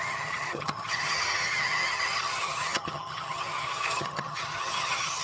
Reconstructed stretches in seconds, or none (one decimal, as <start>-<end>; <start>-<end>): 0.0-5.2